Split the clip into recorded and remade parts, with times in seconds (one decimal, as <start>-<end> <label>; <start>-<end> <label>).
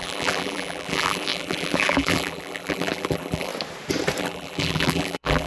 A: 0.0-3.5 remade; 3.5-4.2 recorded; 4.2-5.5 remade